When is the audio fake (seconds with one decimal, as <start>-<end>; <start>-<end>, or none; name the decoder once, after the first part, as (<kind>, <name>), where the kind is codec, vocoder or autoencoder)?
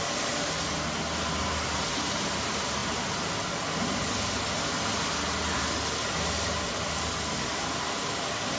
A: none